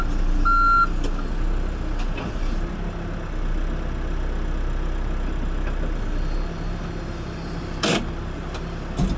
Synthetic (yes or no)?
no